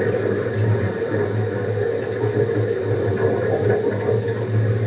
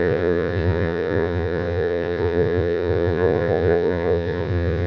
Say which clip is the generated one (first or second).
second